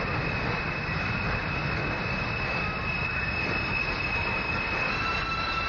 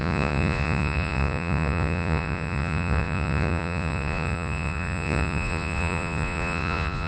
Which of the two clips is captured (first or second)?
first